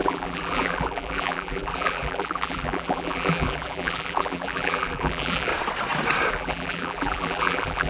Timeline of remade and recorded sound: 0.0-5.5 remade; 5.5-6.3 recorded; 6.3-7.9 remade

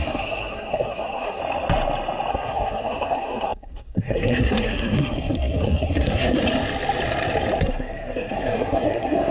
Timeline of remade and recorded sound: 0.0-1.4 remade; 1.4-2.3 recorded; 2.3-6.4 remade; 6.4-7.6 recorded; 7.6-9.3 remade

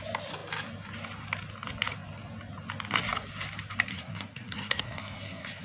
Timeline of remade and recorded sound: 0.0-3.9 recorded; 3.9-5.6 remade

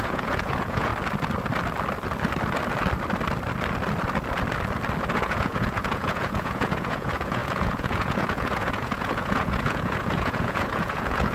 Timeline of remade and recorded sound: 0.0-0.9 remade; 0.9-5.0 recorded; 5.0-11.3 remade

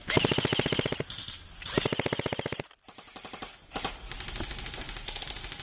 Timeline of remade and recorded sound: 0.0-5.6 recorded

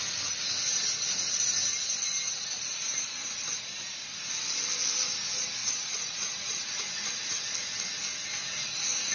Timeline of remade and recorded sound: 0.0-5.6 recorded; 5.6-7.4 remade; 7.4-8.3 recorded; 8.3-9.1 remade